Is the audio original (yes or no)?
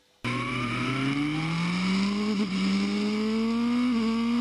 yes